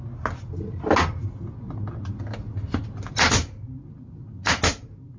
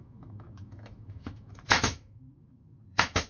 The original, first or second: first